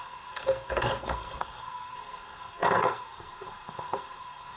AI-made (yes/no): yes